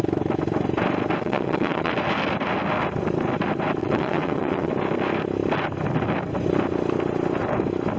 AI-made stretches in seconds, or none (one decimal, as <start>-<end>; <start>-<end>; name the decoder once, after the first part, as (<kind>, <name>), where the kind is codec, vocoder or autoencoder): 1.2-1.9 (vocoder, WaveNeXt); 3.8-4.7